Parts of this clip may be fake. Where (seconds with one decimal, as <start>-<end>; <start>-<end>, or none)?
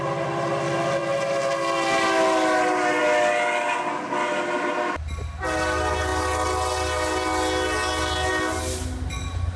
none